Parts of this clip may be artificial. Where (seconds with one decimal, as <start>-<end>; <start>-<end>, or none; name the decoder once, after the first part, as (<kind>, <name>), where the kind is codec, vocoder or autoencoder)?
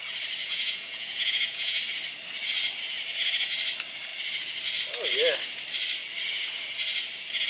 0.4-1.8 (vocoder, Vocos)